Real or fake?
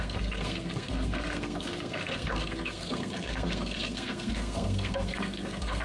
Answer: fake